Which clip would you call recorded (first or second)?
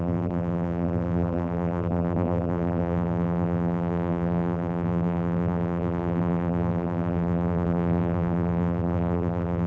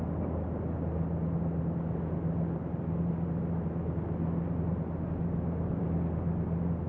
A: second